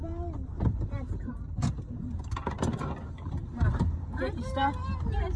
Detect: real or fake fake